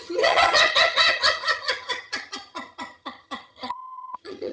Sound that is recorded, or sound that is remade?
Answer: remade